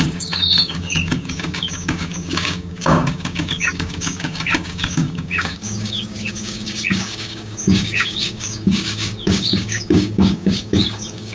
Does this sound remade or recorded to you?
remade